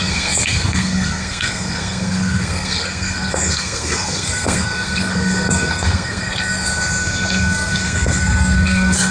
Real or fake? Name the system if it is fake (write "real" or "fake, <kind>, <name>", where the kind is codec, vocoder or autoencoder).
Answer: fake, codec, SNAC